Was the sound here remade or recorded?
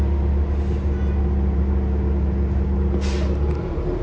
recorded